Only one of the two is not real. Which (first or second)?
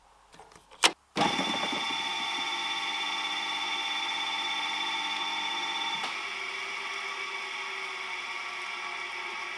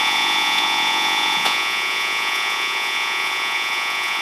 second